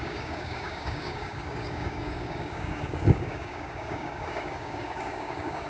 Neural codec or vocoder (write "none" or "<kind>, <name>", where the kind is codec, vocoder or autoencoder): codec, DAC